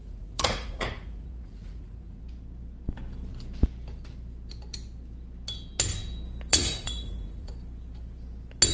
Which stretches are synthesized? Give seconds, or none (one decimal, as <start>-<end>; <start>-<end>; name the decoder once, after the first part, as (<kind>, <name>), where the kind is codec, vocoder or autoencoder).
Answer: 0.0-2.2 (vocoder, Vocos); 6.5-7.5